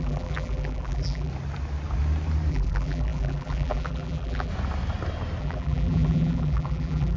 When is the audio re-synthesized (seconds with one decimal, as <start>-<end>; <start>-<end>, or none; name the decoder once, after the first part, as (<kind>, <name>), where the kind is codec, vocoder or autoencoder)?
0.0-1.3 (vocoder, BigVGAN v2); 2.5-4.5; 5.4-7.2